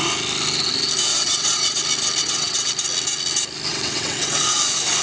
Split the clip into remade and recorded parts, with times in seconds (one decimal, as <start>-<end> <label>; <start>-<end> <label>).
0.0-1.1 recorded; 1.1-1.8 remade; 1.8-2.2 recorded; 2.2-2.7 remade; 2.7-3.7 recorded; 3.7-4.6 remade; 4.6-5.0 recorded